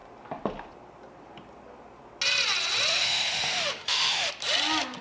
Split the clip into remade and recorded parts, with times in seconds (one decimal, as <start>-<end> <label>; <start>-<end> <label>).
0.0-2.9 recorded; 2.9-4.3 remade; 4.3-5.0 recorded

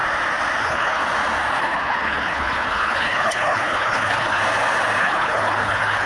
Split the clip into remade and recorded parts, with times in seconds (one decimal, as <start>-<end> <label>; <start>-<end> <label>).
0.0-0.6 recorded; 0.6-1.0 remade; 1.0-1.6 recorded; 1.6-4.4 remade; 4.4-5.0 recorded; 5.0-6.1 remade

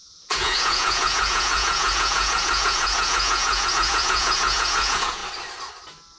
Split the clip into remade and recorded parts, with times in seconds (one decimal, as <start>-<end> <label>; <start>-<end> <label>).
0.0-5.2 remade; 5.2-6.2 recorded

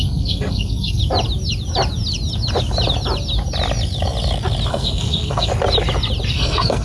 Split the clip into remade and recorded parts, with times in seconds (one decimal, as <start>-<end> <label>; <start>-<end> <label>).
0.0-1.0 remade; 1.0-4.7 recorded; 4.7-5.5 remade; 5.5-6.3 recorded; 6.3-6.8 remade

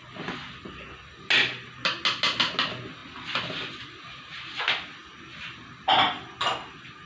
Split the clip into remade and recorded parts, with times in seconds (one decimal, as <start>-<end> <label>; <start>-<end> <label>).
0.0-7.1 recorded

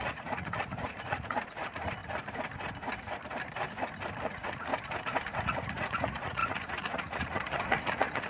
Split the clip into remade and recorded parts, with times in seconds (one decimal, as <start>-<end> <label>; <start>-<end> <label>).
0.0-2.0 remade; 2.0-4.2 recorded; 4.2-4.7 remade; 4.7-5.4 recorded; 5.4-8.3 remade